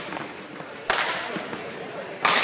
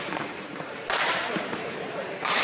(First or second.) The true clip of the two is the first